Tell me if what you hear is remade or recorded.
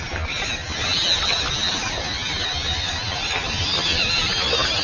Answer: recorded